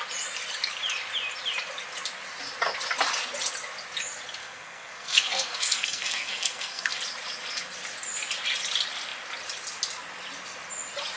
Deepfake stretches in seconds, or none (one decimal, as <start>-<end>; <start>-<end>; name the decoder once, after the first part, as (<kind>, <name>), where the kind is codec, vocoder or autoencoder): 4.4-7.0 (codec, SNAC)